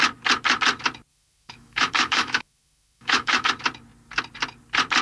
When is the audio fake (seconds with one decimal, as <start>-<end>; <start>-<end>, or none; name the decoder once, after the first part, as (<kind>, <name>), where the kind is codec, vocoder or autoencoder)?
1.1-3.5 (autoencoder, DAC-VAE)